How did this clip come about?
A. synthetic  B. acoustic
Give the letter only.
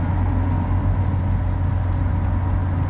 B